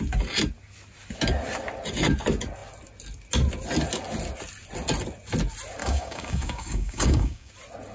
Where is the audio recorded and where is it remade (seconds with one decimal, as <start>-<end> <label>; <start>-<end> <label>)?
0.0-5.8 recorded; 5.8-7.5 remade; 7.5-7.9 recorded